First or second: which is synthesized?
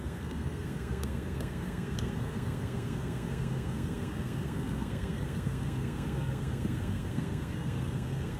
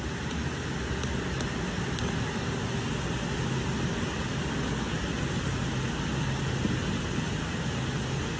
first